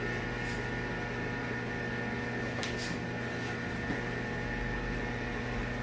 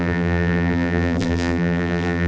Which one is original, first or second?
first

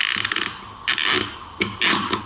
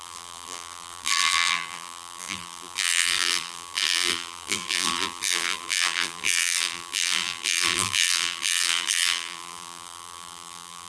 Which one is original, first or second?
first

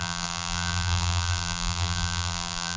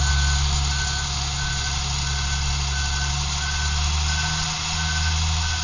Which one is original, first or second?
second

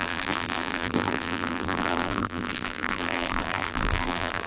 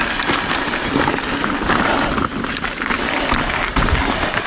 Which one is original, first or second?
second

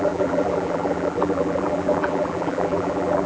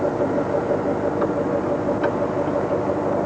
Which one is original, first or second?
second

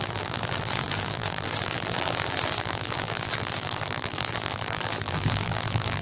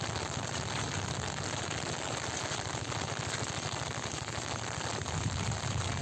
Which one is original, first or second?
second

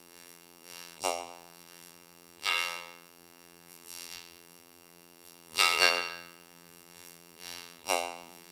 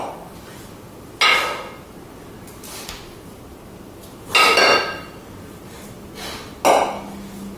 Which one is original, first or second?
second